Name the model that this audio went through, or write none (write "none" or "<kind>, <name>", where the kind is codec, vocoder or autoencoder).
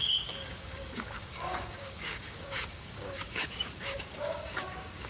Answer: codec, DAC